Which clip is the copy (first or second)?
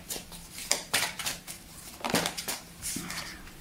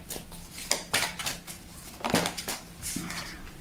first